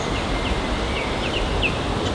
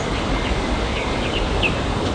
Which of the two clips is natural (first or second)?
first